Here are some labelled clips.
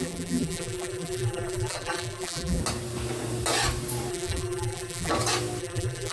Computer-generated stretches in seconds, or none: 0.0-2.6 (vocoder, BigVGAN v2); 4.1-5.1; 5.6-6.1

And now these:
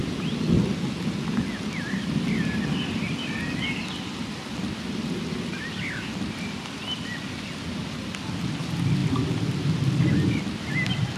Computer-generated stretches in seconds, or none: none

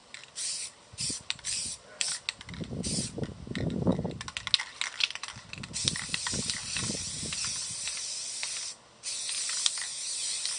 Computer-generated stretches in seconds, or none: 0.0-2.1 (vocoder, BigVGAN v2)

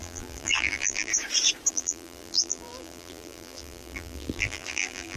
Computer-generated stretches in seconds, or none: 0.0-1.1 (vocoder, BigVGAN v2); 1.7-5.2

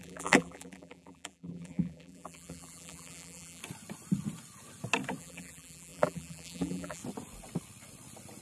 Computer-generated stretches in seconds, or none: 0.0-3.6 (vocoder, BigVGAN v2); 5.2-7.0